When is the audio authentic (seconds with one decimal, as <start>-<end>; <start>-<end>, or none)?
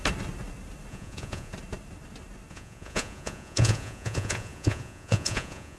0.0-0.9; 1.5-2.5